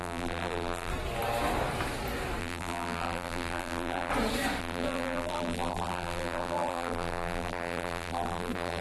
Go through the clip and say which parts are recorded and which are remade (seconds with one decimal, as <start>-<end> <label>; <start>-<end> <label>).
0.0-0.9 remade; 0.9-2.4 recorded; 2.4-4.1 remade; 4.1-4.6 recorded; 4.6-8.8 remade